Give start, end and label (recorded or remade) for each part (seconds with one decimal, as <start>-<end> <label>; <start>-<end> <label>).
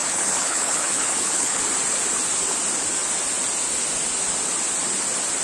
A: 0.0-1.6 remade; 1.6-5.4 recorded